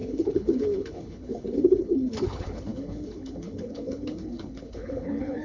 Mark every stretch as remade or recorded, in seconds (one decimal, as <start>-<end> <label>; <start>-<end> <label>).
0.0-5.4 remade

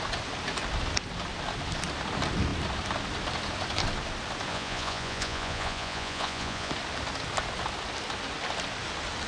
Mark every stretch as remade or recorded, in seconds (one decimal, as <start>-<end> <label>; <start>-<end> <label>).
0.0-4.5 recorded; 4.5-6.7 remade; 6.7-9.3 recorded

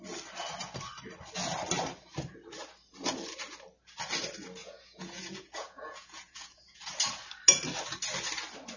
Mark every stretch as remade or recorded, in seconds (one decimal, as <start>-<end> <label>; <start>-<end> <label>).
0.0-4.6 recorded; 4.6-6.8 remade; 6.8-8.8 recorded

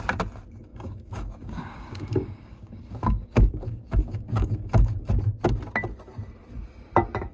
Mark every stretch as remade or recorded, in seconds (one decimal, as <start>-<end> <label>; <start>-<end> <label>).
0.0-0.7 recorded; 0.7-5.1 remade; 5.1-7.3 recorded